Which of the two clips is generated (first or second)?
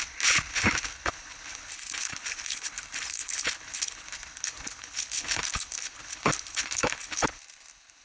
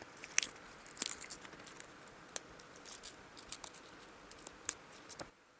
first